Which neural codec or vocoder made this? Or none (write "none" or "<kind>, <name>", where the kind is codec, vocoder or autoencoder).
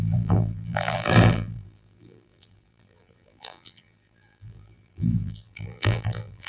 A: vocoder, BigVGAN v2